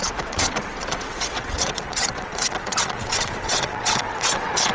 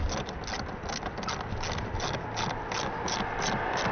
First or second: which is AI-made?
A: first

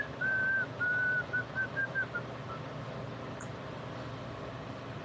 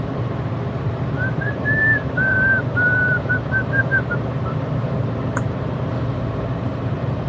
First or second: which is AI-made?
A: second